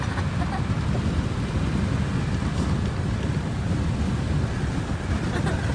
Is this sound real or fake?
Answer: real